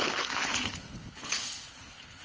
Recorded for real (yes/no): no